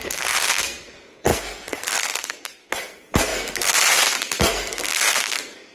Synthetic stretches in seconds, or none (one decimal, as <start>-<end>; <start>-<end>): 0.0-5.7